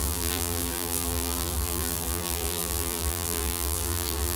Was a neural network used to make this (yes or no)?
yes